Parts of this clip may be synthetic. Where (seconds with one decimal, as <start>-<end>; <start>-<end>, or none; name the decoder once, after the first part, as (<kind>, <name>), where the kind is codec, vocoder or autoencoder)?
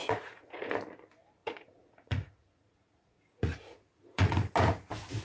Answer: 0.0-0.7 (vocoder, Vocos); 1.4-4.5